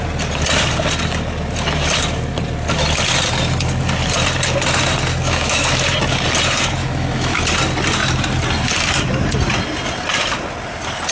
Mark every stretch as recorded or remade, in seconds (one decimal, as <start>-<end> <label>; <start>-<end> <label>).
0.0-5.1 recorded; 5.1-5.8 remade; 5.8-6.8 recorded; 6.8-7.5 remade; 7.5-11.1 recorded